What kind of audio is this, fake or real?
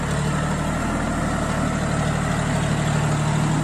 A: real